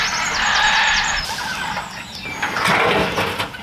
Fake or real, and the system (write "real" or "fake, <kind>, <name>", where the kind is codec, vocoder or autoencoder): real